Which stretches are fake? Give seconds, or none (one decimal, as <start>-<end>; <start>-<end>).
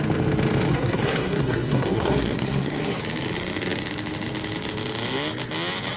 0.7-3.0